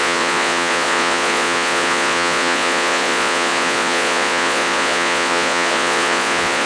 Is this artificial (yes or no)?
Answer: yes